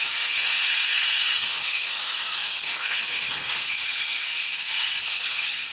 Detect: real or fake fake